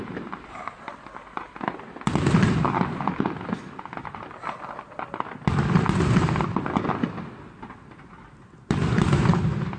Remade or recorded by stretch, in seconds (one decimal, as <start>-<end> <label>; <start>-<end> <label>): 0.0-9.8 recorded